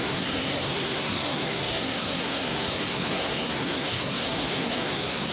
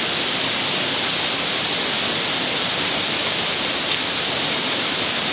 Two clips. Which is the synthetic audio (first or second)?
first